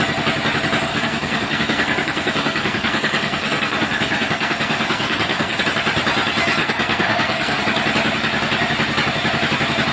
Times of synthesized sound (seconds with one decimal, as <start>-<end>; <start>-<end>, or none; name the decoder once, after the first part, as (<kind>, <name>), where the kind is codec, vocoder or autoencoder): 0.9-5.6 (codec, SNAC); 6.6-7.6